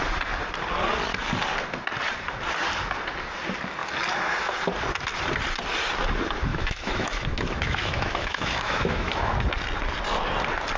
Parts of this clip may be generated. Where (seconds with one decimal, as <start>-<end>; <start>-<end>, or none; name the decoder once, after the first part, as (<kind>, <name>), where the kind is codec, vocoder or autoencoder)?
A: 6.5-9.4 (autoencoder, DAC-VAE)